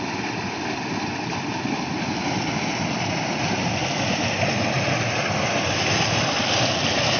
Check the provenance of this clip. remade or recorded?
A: recorded